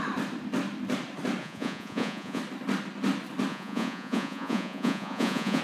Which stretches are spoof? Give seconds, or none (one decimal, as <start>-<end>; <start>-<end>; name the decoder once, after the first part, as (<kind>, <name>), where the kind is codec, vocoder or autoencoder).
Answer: 1.4-2.4 (vocoder, Vocos); 3.5-5.6

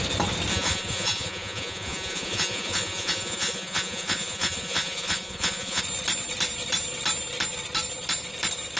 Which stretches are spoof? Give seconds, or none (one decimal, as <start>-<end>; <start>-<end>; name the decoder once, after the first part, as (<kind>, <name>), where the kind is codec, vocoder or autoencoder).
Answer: 0.5-5.8 (vocoder, Vocos)

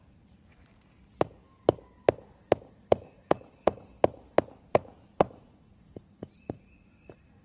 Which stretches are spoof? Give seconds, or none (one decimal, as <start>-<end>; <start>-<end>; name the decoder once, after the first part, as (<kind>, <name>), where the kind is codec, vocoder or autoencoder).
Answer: 0.0-0.7 (vocoder, Vocos); 2.7-3.9; 4.6-7.4

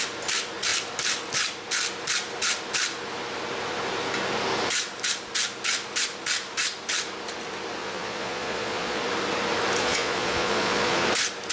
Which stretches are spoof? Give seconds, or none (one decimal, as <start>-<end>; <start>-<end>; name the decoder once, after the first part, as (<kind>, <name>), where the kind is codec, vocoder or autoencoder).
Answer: 7.8-9.0 (vocoder, Vocos); 9.8-11.1

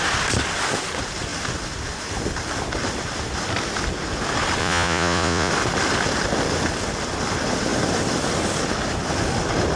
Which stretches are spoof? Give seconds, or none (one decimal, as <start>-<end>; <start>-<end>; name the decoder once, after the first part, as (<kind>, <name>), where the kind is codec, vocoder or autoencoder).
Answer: 4.6-5.5 (vocoder, Vocos)

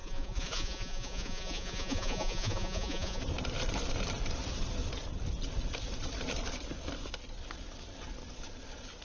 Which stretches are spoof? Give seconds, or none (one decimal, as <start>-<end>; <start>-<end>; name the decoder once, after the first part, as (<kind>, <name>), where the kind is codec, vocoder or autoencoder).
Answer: 0.0-3.2 (vocoder, Vocos)

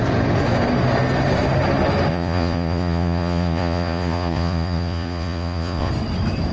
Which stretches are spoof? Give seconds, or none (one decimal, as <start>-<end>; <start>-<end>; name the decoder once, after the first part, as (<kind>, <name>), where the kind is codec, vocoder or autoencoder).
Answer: 2.1-5.9 (vocoder, Vocos)